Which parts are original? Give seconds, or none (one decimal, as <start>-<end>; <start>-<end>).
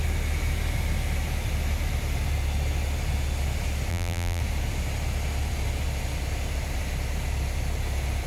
0.0-3.9; 4.4-8.3